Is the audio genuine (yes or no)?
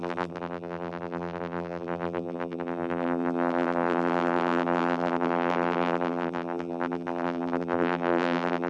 no